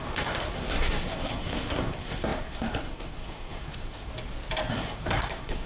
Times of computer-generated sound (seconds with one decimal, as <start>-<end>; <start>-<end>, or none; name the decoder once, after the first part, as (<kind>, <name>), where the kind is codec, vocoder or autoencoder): 0.0-4.1 (codec, SNAC); 4.7-5.7